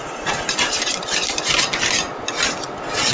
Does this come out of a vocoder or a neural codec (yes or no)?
no